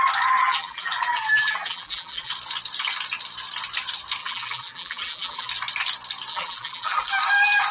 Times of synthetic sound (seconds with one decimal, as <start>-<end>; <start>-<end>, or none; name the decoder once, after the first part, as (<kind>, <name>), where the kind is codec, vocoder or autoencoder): 0.4-2.3 (vocoder, BigVGAN v2); 4.2-5.5; 6.3-7.2